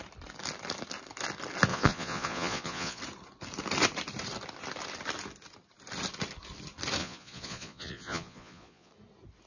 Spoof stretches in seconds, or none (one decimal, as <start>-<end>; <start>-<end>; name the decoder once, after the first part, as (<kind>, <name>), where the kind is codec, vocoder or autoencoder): 1.7-3.0 (vocoder, Vocos); 7.0-8.9